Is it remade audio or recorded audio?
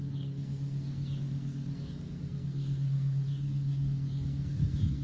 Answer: remade